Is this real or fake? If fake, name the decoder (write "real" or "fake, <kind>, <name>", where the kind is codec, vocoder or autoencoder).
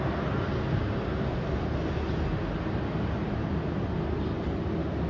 real